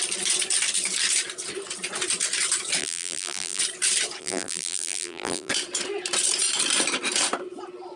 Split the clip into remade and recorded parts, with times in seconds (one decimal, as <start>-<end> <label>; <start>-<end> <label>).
0.0-2.8 recorded; 2.8-3.6 remade; 3.6-4.2 recorded; 4.2-5.5 remade; 5.5-8.0 recorded